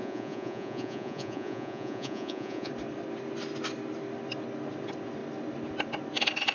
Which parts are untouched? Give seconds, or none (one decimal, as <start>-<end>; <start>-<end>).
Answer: 2.7-6.5